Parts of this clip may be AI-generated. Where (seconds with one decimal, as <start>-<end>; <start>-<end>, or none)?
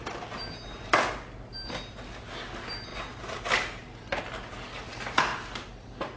2.9-4.2; 5.3-6.2